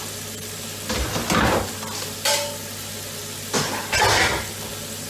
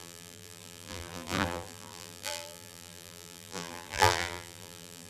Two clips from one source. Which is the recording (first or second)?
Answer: first